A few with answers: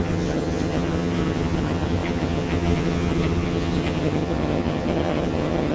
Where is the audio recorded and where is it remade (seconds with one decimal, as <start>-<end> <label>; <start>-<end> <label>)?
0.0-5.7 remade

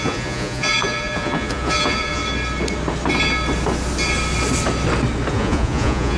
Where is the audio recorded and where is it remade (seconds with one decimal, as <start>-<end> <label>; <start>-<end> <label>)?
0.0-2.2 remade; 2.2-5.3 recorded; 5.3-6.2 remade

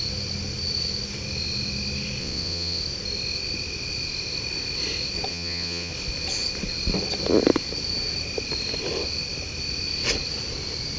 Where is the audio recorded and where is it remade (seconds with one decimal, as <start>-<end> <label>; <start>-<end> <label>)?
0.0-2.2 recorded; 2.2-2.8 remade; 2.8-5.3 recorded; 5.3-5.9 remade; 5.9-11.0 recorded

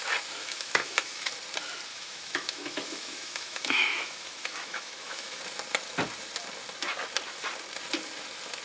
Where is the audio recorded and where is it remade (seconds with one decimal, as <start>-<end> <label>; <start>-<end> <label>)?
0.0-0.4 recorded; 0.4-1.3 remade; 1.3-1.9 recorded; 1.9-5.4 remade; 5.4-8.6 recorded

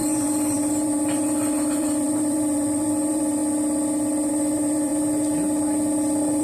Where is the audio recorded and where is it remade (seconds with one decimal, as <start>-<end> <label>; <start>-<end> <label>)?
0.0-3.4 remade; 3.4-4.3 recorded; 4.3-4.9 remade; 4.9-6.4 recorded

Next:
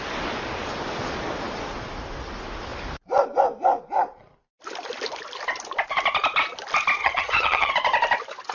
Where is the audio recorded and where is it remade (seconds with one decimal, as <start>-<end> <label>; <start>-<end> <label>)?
0.0-7.0 recorded; 7.0-7.7 remade; 7.7-8.5 recorded

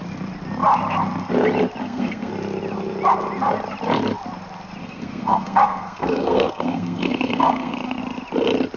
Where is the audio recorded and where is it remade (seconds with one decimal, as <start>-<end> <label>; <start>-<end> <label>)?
0.0-1.8 recorded; 1.8-2.3 remade; 2.3-4.8 recorded; 4.8-8.0 remade; 8.0-8.8 recorded

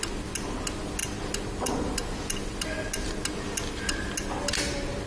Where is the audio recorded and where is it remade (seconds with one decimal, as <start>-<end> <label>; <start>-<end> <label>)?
0.0-5.1 recorded